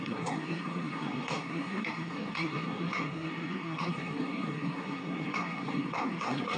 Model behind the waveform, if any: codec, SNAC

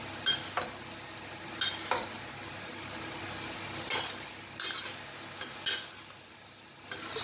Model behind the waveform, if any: none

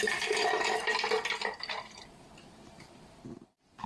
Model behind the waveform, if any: none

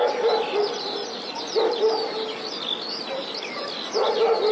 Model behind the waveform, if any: none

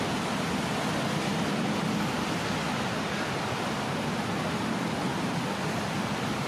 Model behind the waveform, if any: none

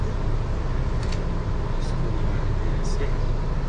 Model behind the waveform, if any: none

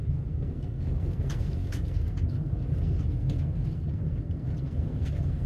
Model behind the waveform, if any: codec, SNAC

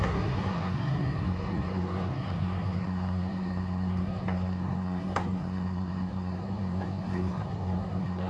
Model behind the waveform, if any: codec, SNAC